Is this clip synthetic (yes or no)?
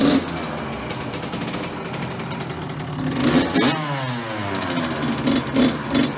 no